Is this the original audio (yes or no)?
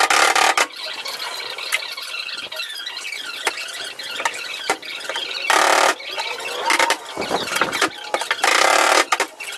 yes